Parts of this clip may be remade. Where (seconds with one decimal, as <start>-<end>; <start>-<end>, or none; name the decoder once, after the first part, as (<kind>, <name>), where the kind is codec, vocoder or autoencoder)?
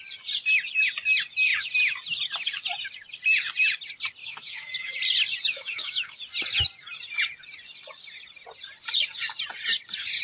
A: 4.2-4.9 (autoencoder, DAC-VAE); 5.5-6.2